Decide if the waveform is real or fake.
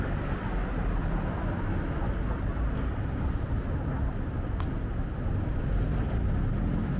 real